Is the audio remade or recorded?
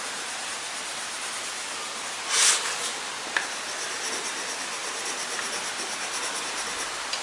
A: recorded